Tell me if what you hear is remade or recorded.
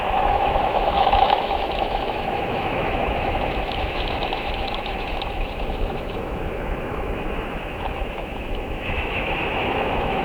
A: remade